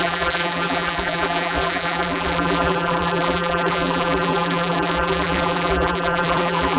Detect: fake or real fake